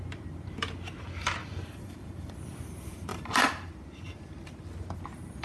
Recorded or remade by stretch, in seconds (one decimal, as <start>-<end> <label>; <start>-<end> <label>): 0.0-1.4 recorded; 1.4-2.3 remade; 2.3-3.1 recorded; 3.1-3.7 remade; 3.7-5.4 recorded